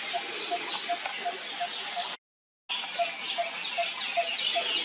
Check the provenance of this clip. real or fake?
real